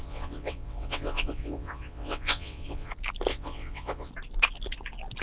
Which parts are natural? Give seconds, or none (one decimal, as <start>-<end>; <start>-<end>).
2.9-3.3; 4.1-5.2